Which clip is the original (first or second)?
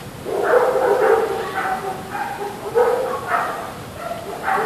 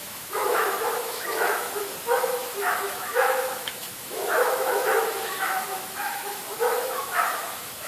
first